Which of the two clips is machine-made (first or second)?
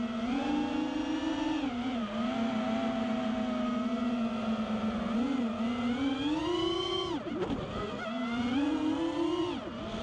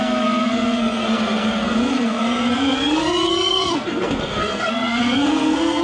second